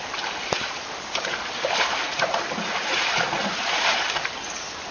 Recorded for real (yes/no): no